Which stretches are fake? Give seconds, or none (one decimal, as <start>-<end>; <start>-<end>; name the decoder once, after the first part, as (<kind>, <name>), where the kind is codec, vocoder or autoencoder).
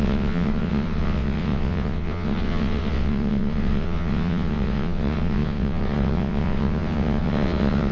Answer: 0.0-7.9 (vocoder, WaveNeXt)